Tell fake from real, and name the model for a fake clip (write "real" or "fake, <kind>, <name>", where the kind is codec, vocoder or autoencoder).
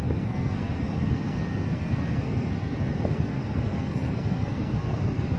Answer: fake, codec, SNAC